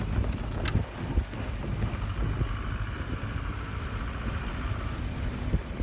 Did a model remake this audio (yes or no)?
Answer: no